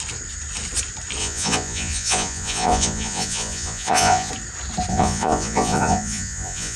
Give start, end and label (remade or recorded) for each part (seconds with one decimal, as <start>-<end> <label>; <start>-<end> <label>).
0.0-1.2 recorded; 1.2-4.3 remade; 4.3-4.9 recorded; 4.9-6.8 remade